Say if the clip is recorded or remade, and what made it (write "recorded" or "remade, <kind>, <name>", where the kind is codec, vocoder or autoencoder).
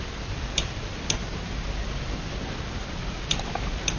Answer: recorded